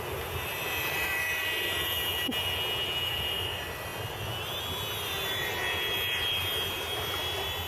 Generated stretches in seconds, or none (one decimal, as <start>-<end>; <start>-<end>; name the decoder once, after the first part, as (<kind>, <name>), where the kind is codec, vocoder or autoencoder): none